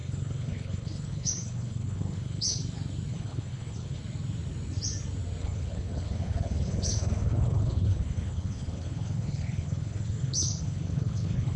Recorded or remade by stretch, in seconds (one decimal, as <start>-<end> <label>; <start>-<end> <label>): 0.0-2.6 remade; 2.6-3.1 recorded; 3.1-4.0 remade; 4.0-5.4 recorded; 5.4-11.6 remade

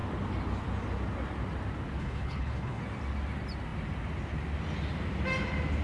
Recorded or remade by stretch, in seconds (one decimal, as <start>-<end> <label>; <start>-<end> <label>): 0.0-2.0 recorded; 2.0-2.8 remade; 2.8-5.8 recorded